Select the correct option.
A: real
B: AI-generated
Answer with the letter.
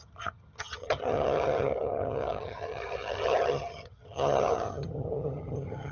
B